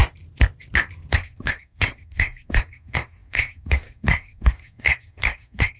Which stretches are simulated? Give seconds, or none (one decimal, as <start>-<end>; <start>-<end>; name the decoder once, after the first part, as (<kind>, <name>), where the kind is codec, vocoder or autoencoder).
1.1-5.8 (codec, SNAC)